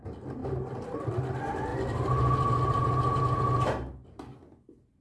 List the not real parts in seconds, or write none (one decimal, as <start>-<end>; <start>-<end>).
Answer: 0.4-1.1; 1.7-3.2

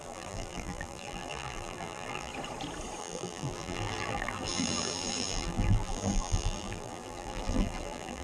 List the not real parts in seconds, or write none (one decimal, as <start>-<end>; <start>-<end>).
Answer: 0.0-2.3; 3.0-8.2

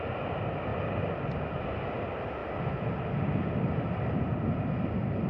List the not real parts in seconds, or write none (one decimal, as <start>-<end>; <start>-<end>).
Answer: 0.7-1.6

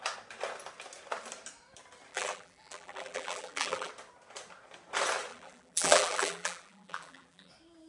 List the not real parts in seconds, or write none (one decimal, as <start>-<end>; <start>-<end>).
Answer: 2.1-3.9; 5.3-7.5

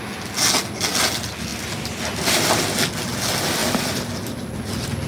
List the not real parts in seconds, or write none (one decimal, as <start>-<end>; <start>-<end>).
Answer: 1.5-2.6

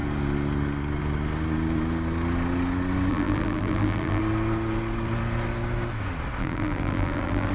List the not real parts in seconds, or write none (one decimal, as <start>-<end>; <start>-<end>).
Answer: 3.1-4.2; 6.4-7.5